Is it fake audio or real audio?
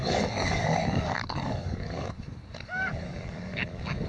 fake